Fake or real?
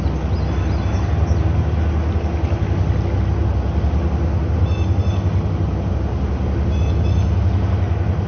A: real